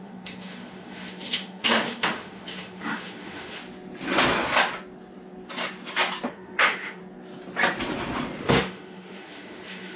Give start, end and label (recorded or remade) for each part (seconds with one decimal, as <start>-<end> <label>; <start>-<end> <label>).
0.0-3.6 remade; 3.6-6.3 recorded; 6.3-7.0 remade; 7.0-8.4 recorded; 8.4-10.0 remade